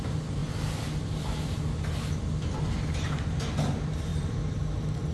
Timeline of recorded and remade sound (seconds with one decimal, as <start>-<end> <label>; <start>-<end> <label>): 0.0-0.4 remade; 0.4-2.9 recorded; 2.9-4.1 remade; 4.1-5.1 recorded